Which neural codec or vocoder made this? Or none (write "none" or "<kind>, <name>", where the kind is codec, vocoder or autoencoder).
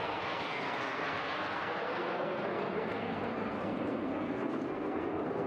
codec, SNAC